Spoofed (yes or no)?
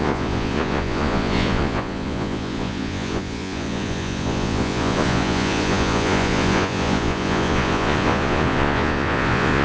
yes